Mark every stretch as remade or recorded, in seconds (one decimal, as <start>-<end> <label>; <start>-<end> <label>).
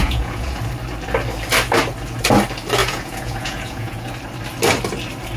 0.0-0.6 remade; 0.6-2.8 recorded; 2.8-4.1 remade; 4.1-5.4 recorded